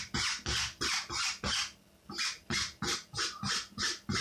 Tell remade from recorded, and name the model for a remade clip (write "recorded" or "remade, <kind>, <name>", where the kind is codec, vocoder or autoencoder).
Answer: recorded